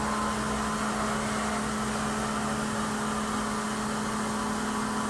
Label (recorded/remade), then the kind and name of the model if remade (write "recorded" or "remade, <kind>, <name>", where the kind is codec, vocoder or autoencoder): recorded